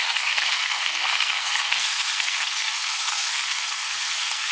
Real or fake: fake